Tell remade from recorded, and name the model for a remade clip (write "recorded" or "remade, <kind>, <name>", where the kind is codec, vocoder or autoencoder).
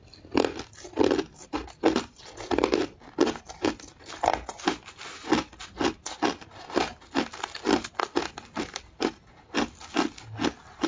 recorded